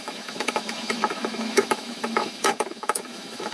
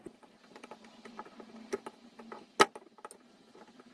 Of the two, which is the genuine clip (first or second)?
second